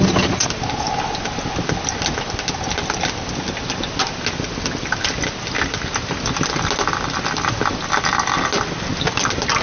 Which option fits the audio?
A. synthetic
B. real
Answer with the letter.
B